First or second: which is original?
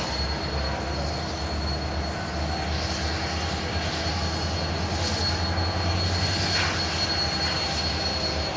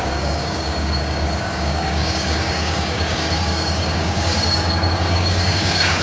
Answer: first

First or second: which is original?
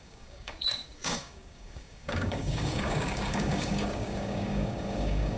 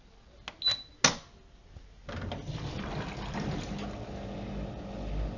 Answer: second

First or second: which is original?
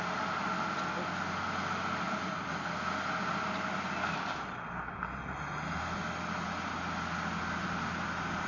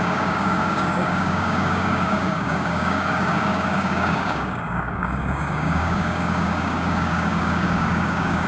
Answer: first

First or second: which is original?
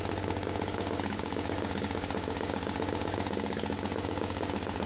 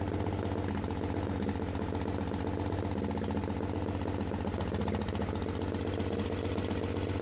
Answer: second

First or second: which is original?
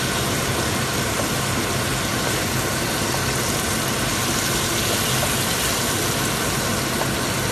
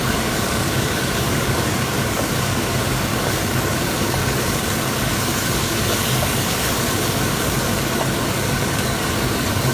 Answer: first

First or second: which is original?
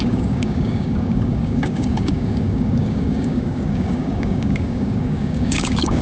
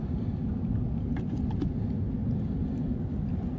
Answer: second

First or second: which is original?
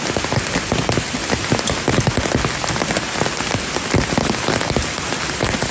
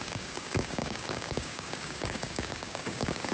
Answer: first